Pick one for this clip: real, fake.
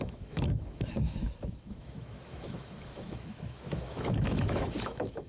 fake